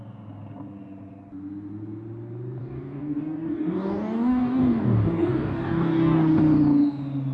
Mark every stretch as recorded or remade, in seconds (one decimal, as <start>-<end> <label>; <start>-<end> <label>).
0.0-2.6 recorded; 2.6-6.4 remade; 6.4-7.3 recorded